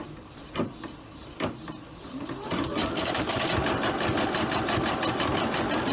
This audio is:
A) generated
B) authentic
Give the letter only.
B